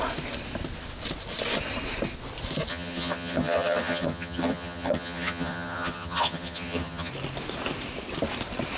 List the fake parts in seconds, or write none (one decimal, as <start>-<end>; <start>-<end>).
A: 2.7-7.1